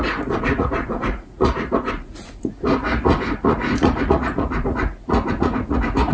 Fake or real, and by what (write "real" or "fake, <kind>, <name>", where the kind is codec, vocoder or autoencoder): fake, vocoder, Vocos